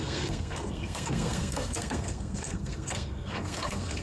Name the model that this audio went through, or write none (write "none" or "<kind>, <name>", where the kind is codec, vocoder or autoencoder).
codec, SNAC